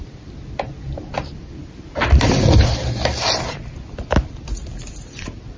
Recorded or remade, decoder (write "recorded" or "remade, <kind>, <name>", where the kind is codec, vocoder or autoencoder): recorded